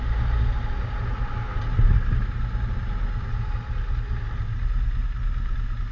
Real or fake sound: real